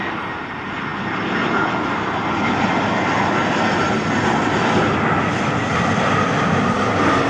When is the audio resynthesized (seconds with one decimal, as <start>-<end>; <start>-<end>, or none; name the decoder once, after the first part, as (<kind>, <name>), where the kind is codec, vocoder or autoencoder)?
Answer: none